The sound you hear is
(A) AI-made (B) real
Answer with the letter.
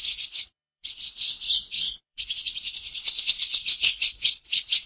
A